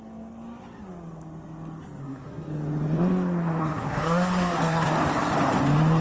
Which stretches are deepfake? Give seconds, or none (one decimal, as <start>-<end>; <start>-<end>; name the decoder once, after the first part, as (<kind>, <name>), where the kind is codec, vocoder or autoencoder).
2.0-2.5 (codec, SNAC); 3.6-4.9